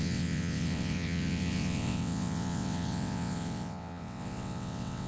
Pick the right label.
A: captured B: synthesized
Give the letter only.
B